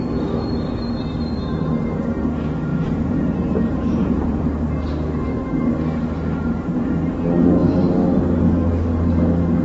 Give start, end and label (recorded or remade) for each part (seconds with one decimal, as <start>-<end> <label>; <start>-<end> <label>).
0.0-2.7 recorded; 2.7-4.4 remade; 4.4-9.6 recorded